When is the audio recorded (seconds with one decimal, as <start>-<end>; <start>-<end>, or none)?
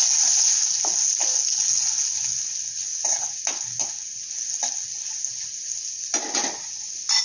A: 0.0-7.2